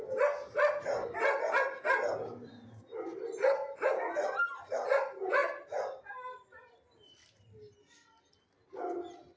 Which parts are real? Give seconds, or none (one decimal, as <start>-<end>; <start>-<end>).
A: 0.0-9.4